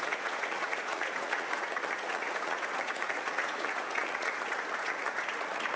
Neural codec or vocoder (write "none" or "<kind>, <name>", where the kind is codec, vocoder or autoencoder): vocoder, Vocos